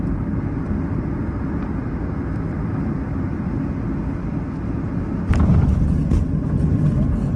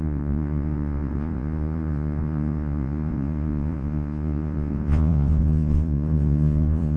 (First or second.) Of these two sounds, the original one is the first